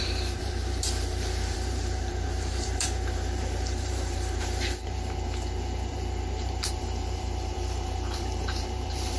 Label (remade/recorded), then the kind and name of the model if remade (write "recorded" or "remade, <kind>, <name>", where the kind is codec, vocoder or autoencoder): remade, vocoder, BigVGAN v2